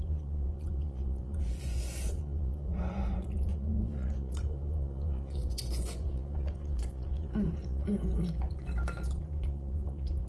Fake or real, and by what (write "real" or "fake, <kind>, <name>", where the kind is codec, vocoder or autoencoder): fake, vocoder, Vocos